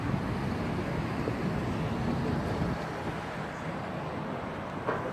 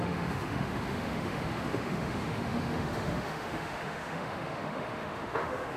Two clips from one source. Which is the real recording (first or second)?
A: first